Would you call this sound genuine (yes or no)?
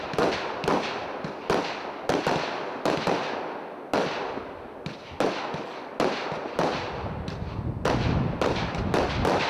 yes